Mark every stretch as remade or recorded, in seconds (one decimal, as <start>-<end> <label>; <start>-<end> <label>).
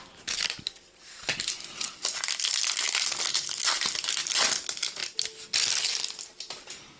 0.0-5.0 remade; 5.0-7.0 recorded